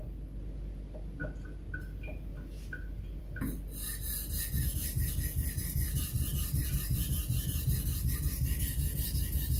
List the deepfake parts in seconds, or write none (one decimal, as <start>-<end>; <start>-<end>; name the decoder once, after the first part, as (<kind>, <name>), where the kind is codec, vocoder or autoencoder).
none

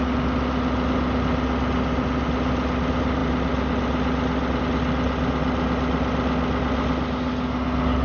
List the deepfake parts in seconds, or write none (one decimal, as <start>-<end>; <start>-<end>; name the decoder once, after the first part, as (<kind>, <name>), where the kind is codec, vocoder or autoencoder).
none

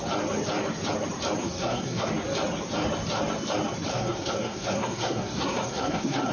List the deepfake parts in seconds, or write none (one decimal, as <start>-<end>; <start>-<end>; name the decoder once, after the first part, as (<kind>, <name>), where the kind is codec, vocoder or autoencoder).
1.4-2.1 (codec, SNAC); 3.9-6.3

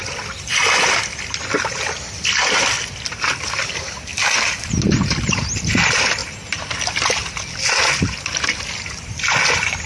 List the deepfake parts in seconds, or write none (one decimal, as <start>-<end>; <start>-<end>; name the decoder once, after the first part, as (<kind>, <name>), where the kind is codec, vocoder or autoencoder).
4.1-5.5 (vocoder, BigVGAN v2)